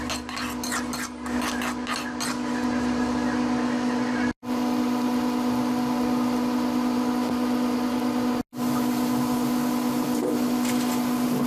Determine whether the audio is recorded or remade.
recorded